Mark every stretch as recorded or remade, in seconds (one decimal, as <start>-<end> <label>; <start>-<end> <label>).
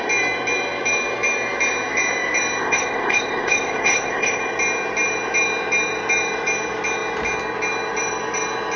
0.0-2.6 recorded; 2.6-4.4 remade; 4.4-8.8 recorded